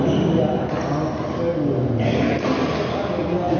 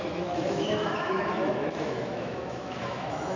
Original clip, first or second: first